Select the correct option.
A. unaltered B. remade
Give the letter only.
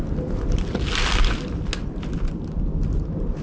A